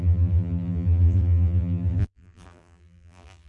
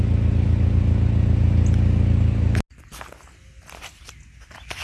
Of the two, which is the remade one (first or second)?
first